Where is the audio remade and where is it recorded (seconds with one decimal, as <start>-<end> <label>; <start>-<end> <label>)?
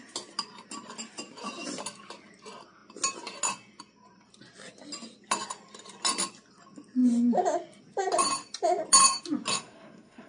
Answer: 0.0-9.5 recorded; 9.5-10.3 remade